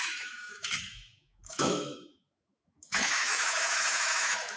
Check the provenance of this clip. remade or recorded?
remade